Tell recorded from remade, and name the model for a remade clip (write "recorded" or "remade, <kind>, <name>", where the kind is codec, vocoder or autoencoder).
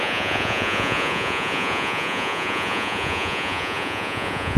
remade, vocoder, Vocos